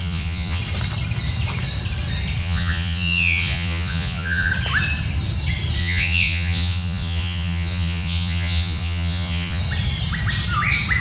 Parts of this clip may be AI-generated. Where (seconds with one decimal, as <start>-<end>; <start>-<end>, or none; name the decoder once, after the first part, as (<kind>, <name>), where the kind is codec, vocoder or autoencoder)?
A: 0.0-0.6 (vocoder, Vocos); 2.4-4.5; 5.8-9.6